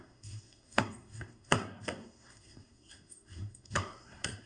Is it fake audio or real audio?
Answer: fake